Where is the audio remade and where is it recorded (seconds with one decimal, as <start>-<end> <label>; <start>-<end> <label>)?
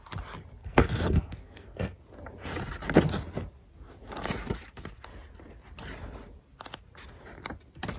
0.0-0.6 recorded; 0.6-2.0 remade; 2.0-8.0 recorded